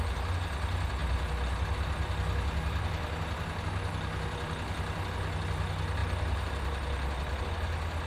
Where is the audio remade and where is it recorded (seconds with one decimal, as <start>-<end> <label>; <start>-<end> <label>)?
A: 0.0-8.1 recorded